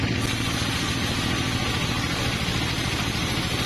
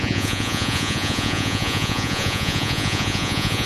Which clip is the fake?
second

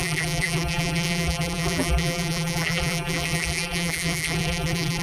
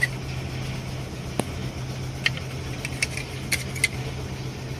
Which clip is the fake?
first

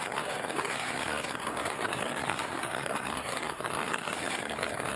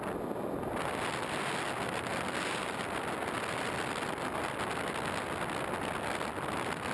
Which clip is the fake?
first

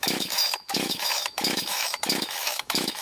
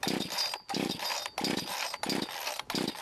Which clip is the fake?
first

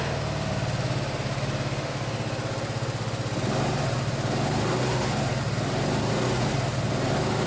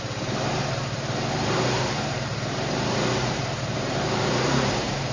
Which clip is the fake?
second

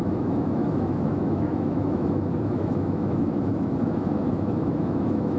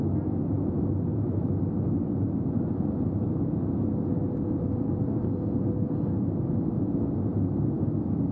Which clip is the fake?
first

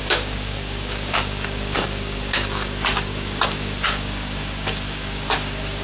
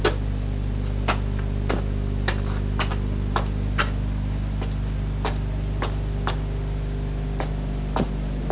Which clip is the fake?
first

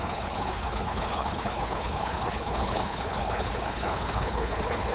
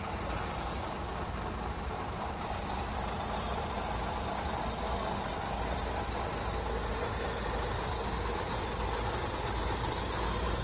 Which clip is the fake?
first